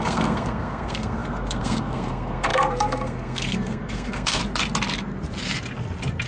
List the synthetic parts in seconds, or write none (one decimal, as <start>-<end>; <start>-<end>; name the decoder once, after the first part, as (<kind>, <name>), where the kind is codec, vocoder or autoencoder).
0.0-4.4 (codec, SNAC)